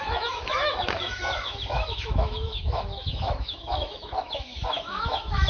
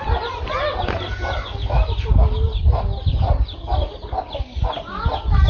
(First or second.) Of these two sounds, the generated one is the first